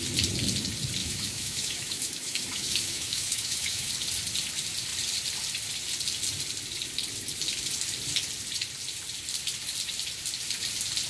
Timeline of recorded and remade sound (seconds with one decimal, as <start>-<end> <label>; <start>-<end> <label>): 0.0-1.0 recorded; 1.0-3.9 remade; 3.9-11.1 recorded